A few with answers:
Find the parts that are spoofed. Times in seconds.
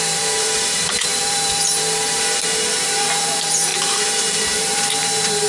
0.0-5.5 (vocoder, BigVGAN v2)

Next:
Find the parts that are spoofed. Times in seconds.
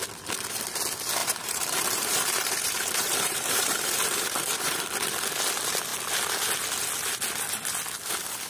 1.2-4.8 (vocoder, BigVGAN v2)